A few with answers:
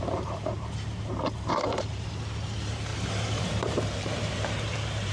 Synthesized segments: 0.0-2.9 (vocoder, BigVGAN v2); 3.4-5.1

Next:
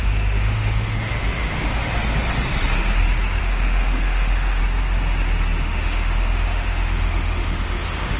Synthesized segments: 0.0-1.7 (autoencoder, DAC-VAE); 3.4-4.6; 5.6-8.2

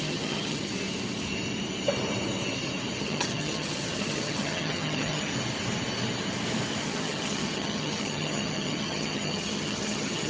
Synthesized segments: 0.0-0.7 (vocoder, HiFi-GAN); 3.0-5.3; 6.8-10.3

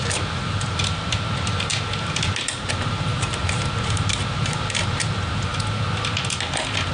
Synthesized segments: 0.0-5.5 (vocoder, BigVGAN v2)

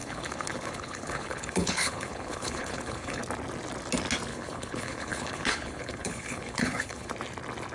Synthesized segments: 0.0-3.2 (codec, HILCodec); 4.3-7.1

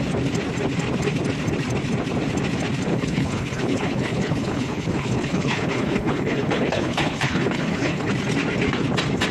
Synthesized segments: 2.9-8.1 (codec, HILCodec)

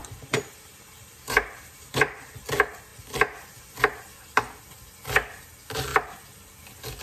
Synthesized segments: 0.0-2.4 (vocoder, BigVGAN v2)